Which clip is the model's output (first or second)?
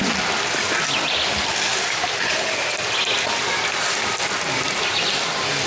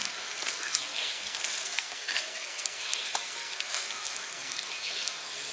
second